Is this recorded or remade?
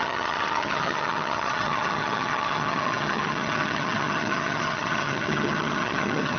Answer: remade